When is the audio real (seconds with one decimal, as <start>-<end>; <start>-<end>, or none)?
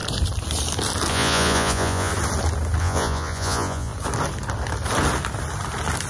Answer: 0.0-1.1; 2.1-2.8; 3.9-6.1